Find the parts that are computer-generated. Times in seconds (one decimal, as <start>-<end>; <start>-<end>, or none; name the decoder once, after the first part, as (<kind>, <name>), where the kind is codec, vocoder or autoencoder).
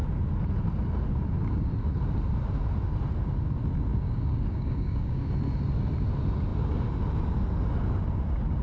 3.9-5.3 (codec, DAC)